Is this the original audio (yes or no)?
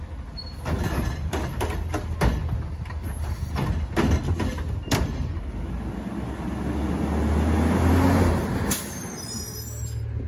yes